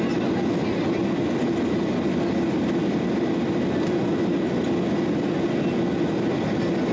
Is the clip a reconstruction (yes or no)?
no